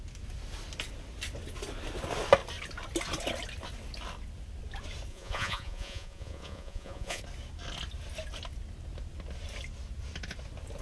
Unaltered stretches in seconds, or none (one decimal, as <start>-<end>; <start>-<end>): 0.0-5.1; 7.2-10.8